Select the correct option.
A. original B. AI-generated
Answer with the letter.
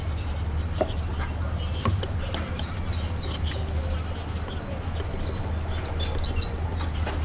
A